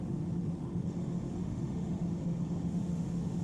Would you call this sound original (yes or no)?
no